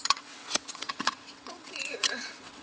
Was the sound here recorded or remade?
remade